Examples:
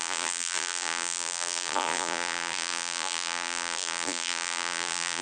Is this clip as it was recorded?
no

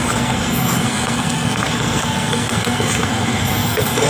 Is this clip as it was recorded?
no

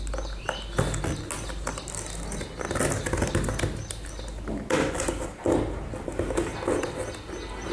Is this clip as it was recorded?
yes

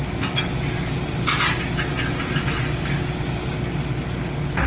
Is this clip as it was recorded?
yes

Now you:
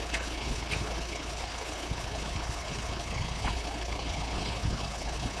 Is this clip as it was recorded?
no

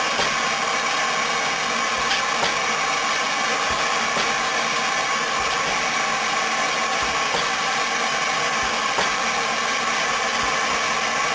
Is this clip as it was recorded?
yes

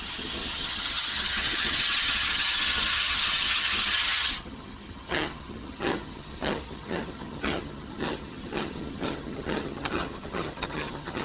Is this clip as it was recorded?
no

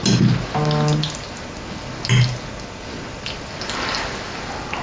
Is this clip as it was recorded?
yes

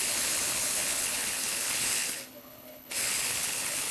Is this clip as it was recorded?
no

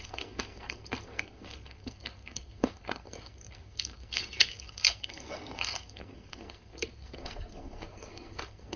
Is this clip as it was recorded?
no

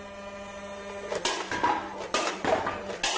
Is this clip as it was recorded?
yes